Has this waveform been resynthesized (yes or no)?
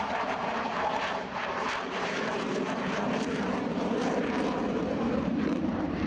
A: yes